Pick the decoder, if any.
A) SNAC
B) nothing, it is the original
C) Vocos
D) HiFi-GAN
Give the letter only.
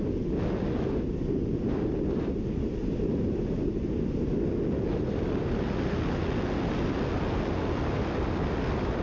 B